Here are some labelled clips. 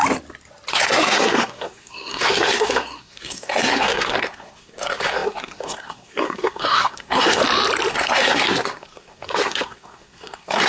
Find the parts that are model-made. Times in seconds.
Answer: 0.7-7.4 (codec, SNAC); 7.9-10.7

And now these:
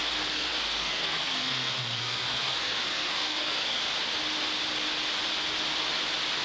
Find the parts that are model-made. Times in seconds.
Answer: 0.0-3.8 (codec, SNAC)

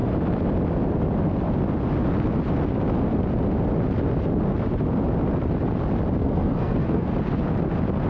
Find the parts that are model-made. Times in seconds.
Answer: 6.2-7.1 (codec, SNAC)